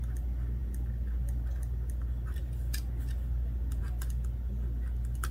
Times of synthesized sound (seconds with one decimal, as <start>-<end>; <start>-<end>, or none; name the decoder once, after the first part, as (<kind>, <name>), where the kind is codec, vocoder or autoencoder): none